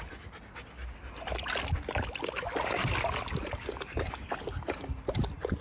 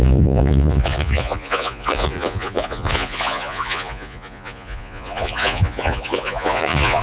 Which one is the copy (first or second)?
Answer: second